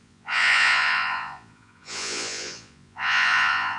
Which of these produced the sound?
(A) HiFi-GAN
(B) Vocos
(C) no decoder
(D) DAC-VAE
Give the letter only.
B